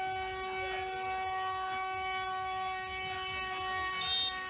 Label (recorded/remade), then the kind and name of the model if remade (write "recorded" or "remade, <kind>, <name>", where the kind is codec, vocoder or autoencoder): recorded